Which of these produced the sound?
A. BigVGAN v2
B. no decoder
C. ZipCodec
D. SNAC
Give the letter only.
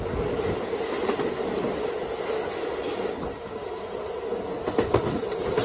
B